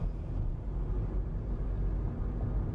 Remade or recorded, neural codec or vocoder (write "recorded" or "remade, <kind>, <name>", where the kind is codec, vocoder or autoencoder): recorded